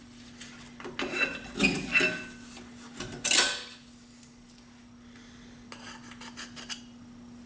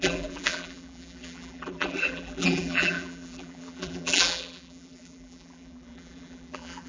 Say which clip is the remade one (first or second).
second